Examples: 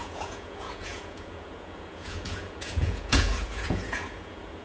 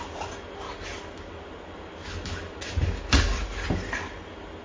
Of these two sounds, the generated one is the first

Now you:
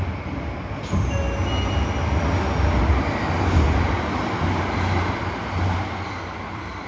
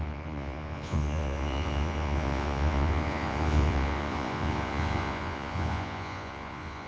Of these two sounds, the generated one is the second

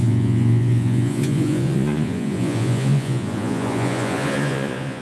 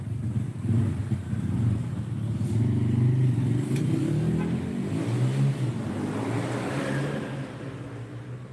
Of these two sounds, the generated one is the first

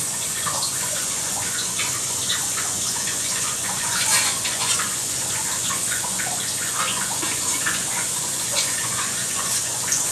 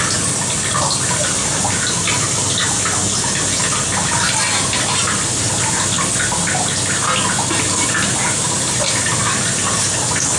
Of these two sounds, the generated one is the first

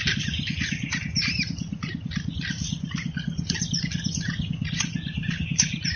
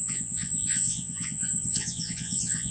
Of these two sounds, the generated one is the second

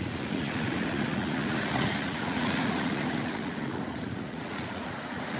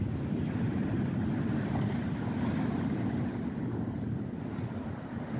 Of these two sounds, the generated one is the first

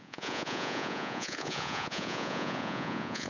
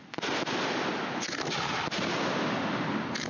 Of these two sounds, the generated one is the first